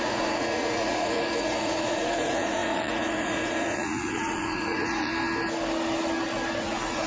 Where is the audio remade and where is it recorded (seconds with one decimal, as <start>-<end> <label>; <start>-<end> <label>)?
0.0-5.1 remade; 5.1-6.6 recorded; 6.6-7.1 remade